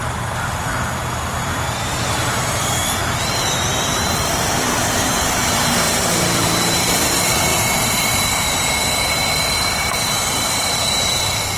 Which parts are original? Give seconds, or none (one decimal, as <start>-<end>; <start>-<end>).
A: 7.5-10.3